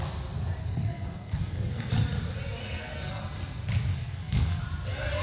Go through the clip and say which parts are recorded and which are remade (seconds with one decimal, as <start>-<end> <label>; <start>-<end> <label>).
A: 0.0-0.6 recorded; 0.6-1.9 remade; 1.9-2.6 recorded; 2.6-3.2 remade; 3.2-3.9 recorded; 3.9-4.6 remade; 4.6-5.2 recorded